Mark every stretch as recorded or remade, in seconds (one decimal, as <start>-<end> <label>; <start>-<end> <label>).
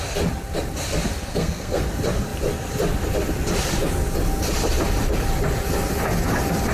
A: 0.0-1.3 recorded; 1.3-1.8 remade; 1.8-6.7 recorded